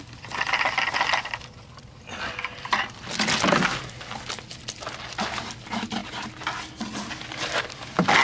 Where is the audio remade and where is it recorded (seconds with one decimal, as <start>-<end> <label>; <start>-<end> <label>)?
0.0-8.2 recorded